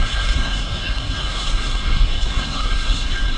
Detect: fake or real fake